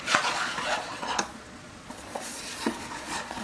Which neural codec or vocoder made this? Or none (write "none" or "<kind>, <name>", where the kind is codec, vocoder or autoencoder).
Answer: vocoder, Vocos